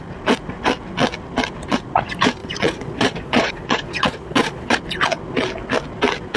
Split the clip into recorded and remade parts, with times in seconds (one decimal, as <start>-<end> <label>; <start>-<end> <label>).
0.0-2.4 recorded; 2.4-4.8 remade; 4.8-6.4 recorded